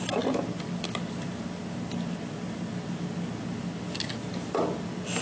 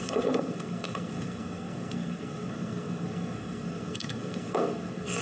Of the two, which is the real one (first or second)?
first